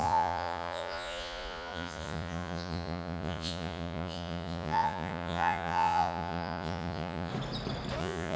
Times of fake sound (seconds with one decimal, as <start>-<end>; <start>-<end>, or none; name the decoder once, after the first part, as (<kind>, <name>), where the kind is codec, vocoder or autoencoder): 0.0-7.3 (vocoder, Vocos); 8.0-8.4